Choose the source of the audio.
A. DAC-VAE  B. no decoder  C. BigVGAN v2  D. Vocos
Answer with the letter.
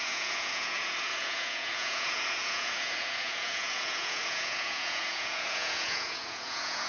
D